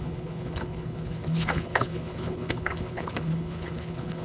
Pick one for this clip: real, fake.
fake